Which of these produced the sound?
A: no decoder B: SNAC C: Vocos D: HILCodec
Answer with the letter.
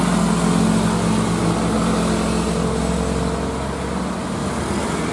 A